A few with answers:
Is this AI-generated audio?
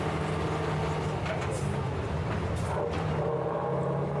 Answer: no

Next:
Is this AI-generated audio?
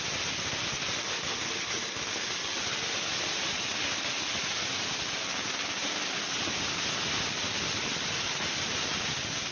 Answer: no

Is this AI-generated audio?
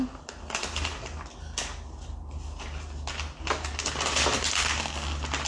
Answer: no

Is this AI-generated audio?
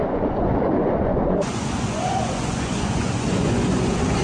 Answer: yes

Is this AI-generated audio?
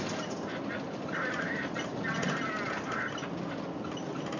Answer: no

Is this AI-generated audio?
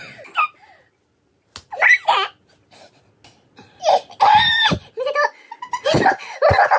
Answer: no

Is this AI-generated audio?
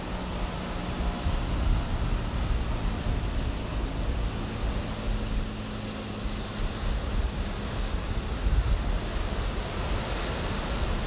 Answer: no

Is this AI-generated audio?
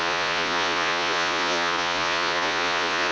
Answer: yes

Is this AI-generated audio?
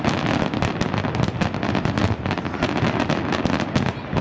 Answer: no